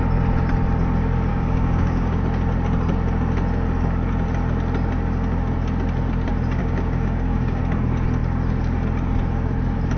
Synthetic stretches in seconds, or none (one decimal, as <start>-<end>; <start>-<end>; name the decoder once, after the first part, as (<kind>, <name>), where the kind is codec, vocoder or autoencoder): 1.3-2.2 (codec, DAC); 6.6-7.6